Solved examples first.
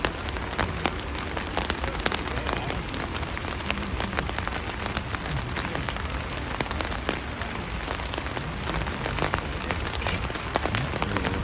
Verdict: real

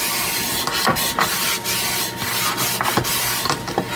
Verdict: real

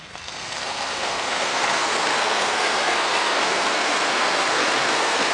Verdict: fake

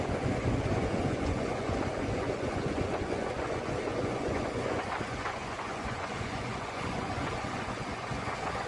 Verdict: fake